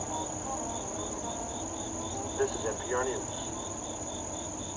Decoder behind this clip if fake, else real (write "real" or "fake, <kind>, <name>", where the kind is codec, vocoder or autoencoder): real